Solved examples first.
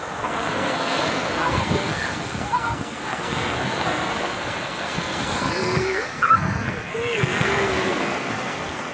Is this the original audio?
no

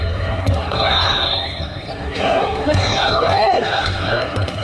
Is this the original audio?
no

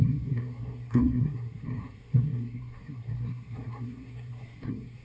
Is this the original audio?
no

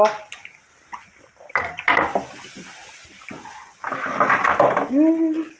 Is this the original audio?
yes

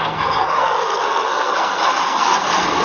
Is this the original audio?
no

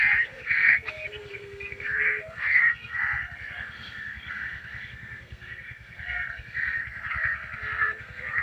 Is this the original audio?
no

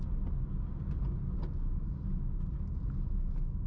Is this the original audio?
yes